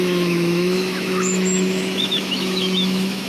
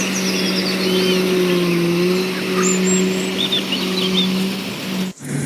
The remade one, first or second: first